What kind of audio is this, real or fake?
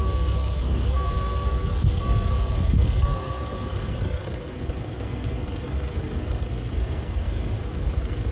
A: fake